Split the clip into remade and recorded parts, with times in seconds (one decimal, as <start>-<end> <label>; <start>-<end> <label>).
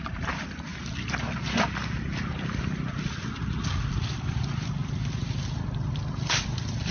0.0-0.7 remade; 0.7-3.5 recorded; 3.5-4.8 remade; 4.8-6.4 recorded; 6.4-6.9 remade